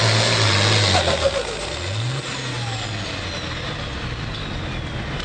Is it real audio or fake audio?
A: real